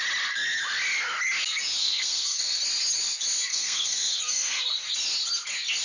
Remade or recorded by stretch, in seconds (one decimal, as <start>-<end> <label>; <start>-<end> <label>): 0.0-1.8 recorded; 1.8-2.6 remade; 2.6-3.5 recorded; 3.5-4.6 remade; 4.6-5.8 recorded